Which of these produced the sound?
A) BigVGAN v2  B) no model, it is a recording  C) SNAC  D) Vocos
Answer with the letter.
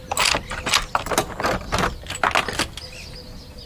B